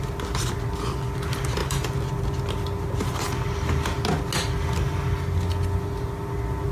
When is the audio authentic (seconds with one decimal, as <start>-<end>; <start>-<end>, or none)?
0.0-6.7